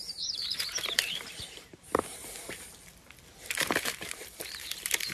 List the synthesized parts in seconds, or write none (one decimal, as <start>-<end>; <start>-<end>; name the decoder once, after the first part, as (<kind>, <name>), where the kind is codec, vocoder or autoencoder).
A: 0.0-2.2 (vocoder, BigVGAN v2); 3.7-5.1